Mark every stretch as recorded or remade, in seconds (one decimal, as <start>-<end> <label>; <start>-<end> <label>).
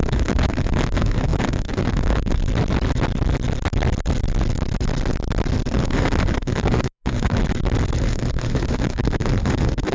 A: 0.0-2.4 remade; 2.4-5.7 recorded; 5.7-7.4 remade; 7.4-8.0 recorded; 8.0-9.9 remade